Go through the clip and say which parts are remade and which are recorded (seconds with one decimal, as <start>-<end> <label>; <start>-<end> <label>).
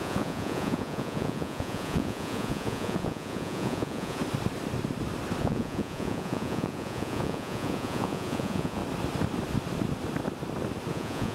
0.0-4.2 remade; 4.2-5.4 recorded; 5.4-8.8 remade; 8.8-10.9 recorded; 10.9-11.3 remade